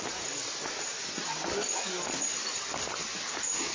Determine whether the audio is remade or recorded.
recorded